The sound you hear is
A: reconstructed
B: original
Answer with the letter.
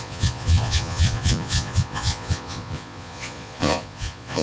A